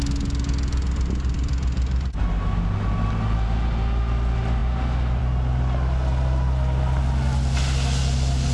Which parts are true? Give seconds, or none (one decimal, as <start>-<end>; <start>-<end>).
0.0-8.5